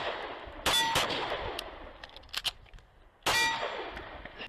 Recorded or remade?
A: recorded